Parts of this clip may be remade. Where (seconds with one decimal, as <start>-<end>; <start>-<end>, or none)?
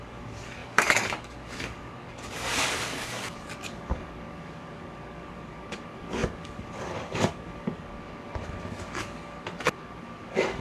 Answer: 0.0-10.6